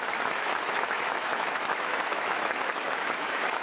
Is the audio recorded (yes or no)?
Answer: no